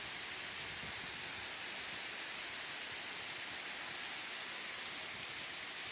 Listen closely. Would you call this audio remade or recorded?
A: recorded